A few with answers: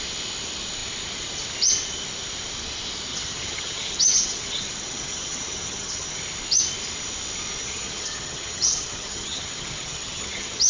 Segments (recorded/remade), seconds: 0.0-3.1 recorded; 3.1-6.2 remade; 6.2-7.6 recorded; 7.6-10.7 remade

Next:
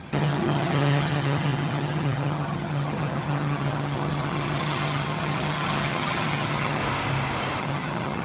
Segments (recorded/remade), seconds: 0.0-6.8 remade; 6.8-7.6 recorded; 7.6-8.2 remade

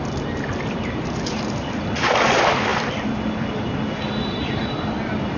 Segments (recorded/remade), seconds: 0.0-5.4 recorded

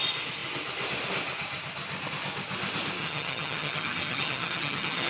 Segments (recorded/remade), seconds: 0.0-3.0 recorded; 3.0-5.1 remade

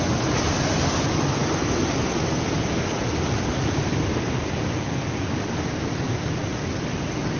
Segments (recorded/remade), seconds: 0.0-7.4 recorded

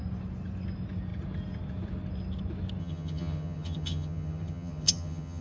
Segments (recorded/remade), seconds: 0.0-2.8 recorded; 2.8-5.4 remade